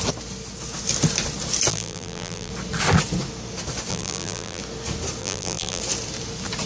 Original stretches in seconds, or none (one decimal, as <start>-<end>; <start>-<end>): 0.0-1.7; 2.5-3.9; 4.6-5.2; 5.8-6.7